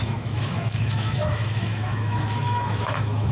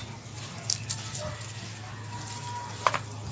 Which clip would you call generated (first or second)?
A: first